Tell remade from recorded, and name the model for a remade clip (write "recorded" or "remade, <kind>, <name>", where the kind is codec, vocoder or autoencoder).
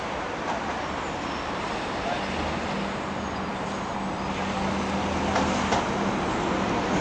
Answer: recorded